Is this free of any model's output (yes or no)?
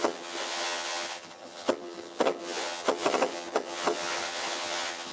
no